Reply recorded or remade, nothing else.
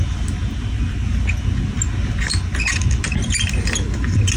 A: recorded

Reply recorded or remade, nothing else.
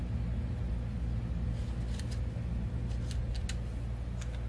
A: recorded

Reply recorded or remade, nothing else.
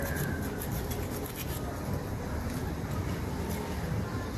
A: recorded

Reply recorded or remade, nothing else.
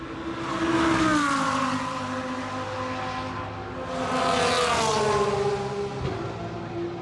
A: recorded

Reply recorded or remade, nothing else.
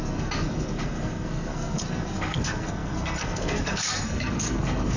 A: remade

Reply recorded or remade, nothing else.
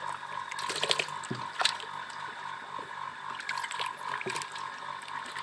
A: recorded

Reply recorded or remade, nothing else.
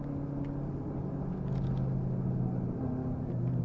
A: recorded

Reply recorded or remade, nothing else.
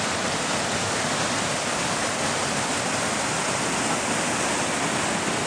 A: recorded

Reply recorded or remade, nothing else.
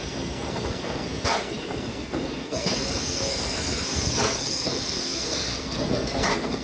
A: remade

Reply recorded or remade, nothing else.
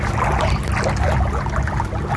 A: recorded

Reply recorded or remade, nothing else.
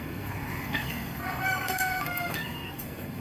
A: remade